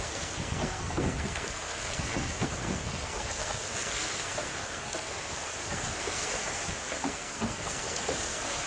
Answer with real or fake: fake